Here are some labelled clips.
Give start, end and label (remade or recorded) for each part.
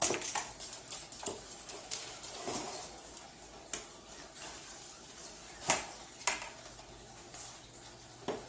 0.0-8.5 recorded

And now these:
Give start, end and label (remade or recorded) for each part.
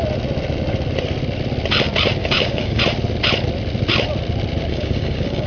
0.0-2.2 recorded; 2.2-2.8 remade; 2.8-4.7 recorded; 4.7-5.5 remade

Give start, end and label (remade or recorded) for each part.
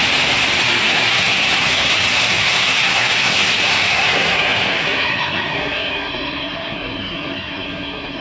0.0-0.6 recorded; 0.6-8.2 remade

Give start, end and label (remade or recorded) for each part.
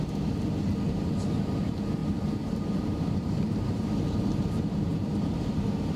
0.0-2.0 recorded; 2.0-5.6 remade; 5.6-6.0 recorded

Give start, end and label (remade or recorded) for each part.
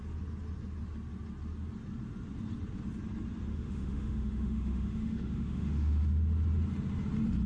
0.0-3.5 recorded; 3.5-6.2 remade; 6.2-7.5 recorded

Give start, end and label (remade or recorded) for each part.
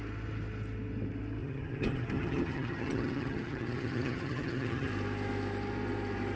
0.0-1.4 recorded; 1.4-4.9 remade; 4.9-6.4 recorded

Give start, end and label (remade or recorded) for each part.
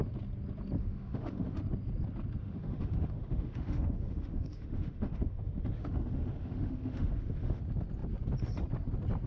0.0-0.8 recorded; 0.8-1.6 remade; 1.6-2.4 recorded; 2.4-7.6 remade; 7.6-9.3 recorded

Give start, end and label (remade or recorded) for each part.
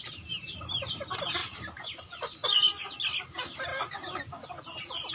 0.0-2.4 remade; 2.4-3.2 recorded; 3.2-5.1 remade